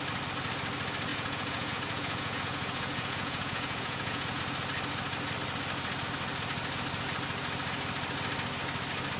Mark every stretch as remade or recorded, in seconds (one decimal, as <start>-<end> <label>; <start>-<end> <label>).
0.0-1.1 recorded; 1.1-4.4 remade; 4.4-9.2 recorded